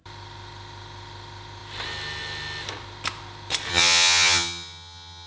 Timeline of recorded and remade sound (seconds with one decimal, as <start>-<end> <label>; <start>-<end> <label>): 0.0-3.7 recorded; 3.7-5.3 remade